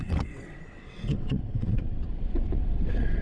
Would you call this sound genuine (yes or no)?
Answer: no